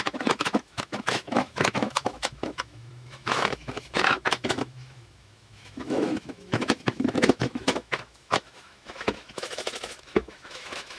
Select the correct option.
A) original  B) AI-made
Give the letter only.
B